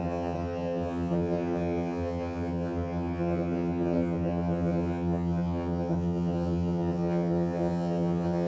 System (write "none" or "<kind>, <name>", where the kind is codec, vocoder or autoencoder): vocoder, HiFi-GAN